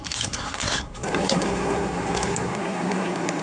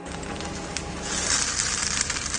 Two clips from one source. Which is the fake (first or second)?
first